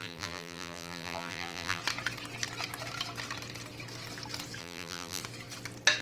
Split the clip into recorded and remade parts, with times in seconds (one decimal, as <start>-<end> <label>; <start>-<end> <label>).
0.0-1.8 remade; 1.8-4.6 recorded; 4.6-5.2 remade; 5.2-6.0 recorded